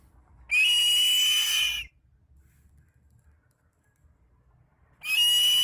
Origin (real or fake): real